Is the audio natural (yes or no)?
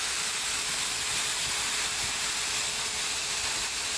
yes